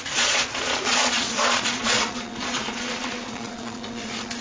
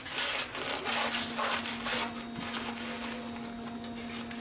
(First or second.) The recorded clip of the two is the second